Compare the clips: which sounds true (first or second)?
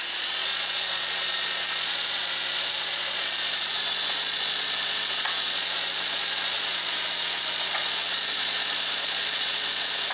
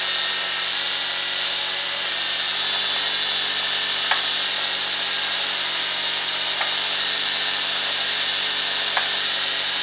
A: second